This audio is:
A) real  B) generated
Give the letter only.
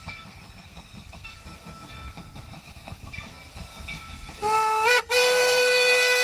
B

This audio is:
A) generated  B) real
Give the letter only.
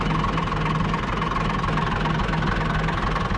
B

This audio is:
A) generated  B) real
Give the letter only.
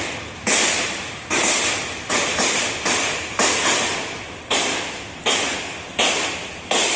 B